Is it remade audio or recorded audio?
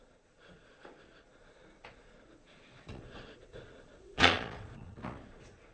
remade